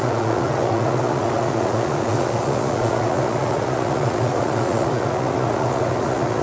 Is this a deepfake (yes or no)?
yes